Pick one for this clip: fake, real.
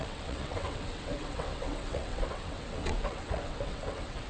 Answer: fake